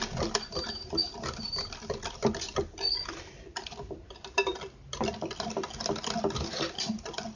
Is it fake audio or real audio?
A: real